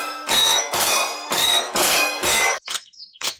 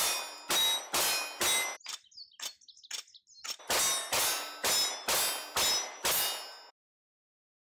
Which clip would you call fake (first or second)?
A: first